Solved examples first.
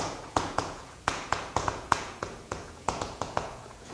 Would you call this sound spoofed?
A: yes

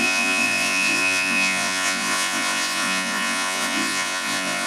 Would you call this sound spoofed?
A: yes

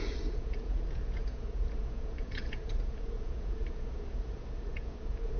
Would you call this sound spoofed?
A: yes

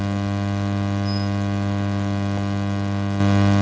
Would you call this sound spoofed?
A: no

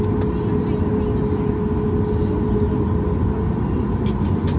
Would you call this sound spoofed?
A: no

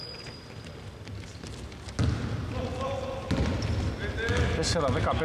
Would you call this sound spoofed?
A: no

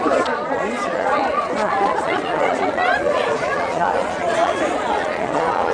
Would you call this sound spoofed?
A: yes